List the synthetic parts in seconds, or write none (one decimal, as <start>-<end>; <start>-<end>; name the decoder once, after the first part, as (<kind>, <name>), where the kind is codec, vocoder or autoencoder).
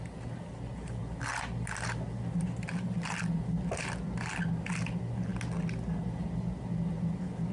none